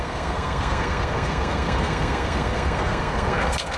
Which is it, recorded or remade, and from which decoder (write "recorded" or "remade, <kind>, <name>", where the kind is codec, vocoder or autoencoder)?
remade, codec, SNAC